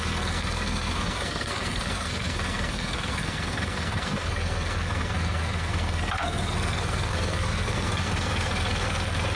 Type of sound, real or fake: fake